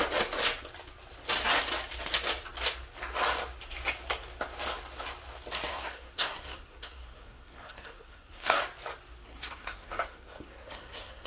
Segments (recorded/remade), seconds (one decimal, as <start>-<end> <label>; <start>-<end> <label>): 0.0-5.7 recorded; 5.7-8.6 remade; 8.6-9.2 recorded; 9.2-11.3 remade